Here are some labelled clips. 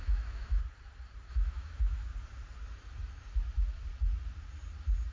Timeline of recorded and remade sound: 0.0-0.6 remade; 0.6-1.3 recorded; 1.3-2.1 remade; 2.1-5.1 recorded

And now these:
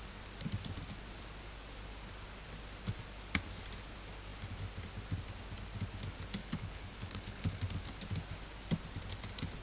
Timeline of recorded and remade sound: 0.0-6.4 recorded; 6.4-7.6 remade; 7.6-9.6 recorded